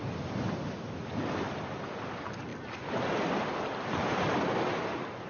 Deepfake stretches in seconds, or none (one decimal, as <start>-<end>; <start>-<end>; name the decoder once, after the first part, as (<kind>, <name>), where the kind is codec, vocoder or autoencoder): none